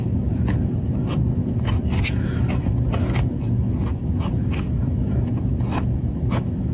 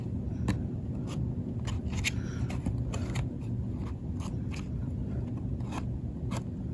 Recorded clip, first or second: second